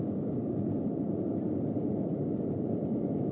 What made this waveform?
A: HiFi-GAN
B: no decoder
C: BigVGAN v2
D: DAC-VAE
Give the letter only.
B